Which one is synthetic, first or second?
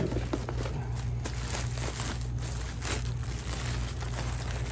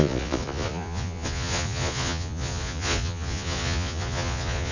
second